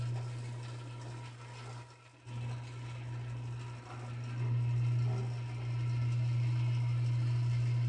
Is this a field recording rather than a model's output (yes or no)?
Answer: yes